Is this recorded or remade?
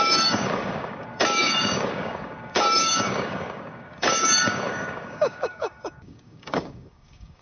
remade